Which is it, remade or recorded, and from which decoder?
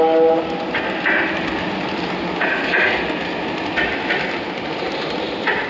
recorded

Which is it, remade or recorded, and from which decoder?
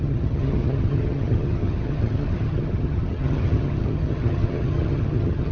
remade, vocoder, HiFi-GAN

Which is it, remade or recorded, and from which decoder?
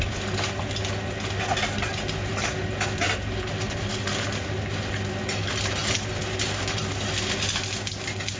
recorded